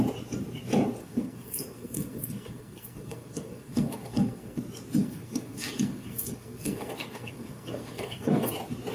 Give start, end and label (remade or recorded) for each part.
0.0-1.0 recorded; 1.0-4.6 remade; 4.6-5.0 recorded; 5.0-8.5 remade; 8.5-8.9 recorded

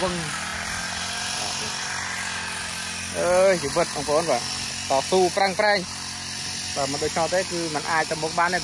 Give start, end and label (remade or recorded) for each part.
0.0-8.6 recorded